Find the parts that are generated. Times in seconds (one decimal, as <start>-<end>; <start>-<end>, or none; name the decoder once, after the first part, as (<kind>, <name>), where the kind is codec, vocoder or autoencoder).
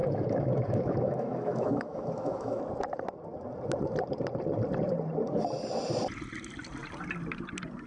0.0-2.6 (autoencoder, DAC-VAE)